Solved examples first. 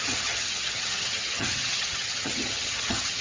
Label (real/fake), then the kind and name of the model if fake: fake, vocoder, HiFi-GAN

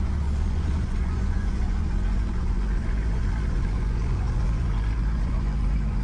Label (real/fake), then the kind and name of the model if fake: fake, vocoder, Vocos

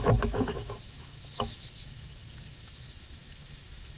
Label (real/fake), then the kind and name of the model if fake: fake, autoencoder, DAC-VAE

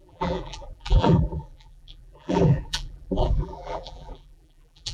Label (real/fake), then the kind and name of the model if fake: fake, vocoder, BigVGAN v2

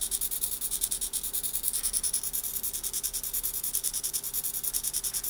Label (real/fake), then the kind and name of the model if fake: real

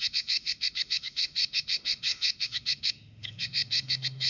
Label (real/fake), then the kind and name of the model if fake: fake, autoencoder, DAC-VAE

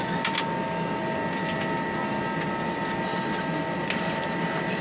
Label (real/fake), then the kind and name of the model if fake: real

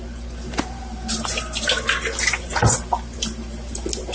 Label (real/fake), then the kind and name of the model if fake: real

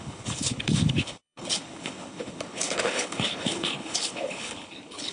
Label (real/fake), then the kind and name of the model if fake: fake, codec, HILCodec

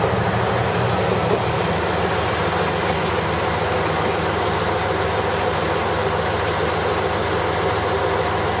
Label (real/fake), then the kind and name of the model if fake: real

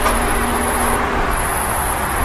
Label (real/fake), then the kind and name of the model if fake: real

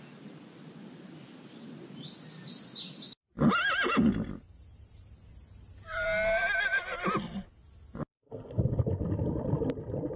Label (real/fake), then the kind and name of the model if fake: real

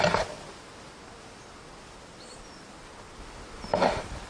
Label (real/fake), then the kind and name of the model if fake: real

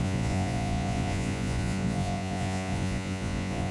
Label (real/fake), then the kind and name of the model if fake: fake, vocoder, Vocos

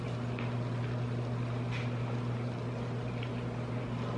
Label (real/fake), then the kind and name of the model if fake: real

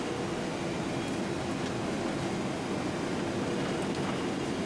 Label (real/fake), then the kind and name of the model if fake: real